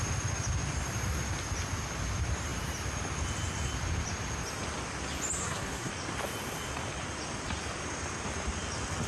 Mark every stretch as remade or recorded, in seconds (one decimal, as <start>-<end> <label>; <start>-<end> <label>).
0.0-5.4 recorded; 5.4-5.9 remade; 5.9-9.1 recorded